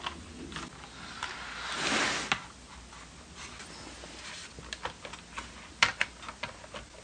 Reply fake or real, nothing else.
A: real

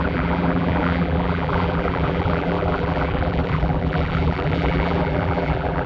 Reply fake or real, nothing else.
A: fake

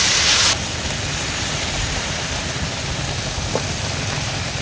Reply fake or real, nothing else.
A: real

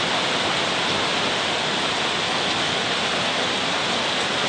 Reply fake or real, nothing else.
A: real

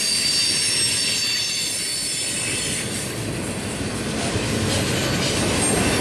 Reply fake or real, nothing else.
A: real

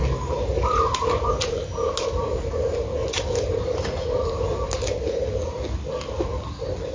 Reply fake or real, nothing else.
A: real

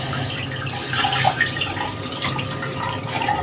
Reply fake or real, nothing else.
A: fake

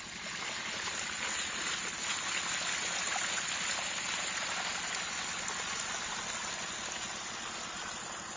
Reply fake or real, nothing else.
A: real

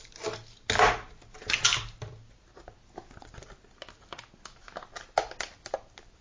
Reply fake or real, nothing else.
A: real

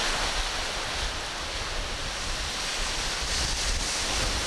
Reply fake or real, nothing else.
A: real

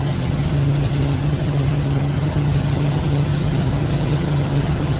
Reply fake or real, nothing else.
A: fake